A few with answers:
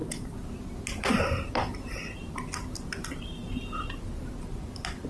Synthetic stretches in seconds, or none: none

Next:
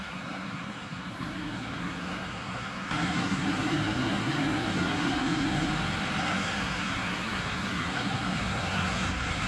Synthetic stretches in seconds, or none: 0.0-5.7 (codec, SNAC); 6.2-9.5